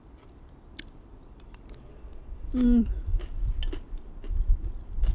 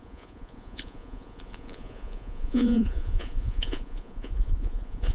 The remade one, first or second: second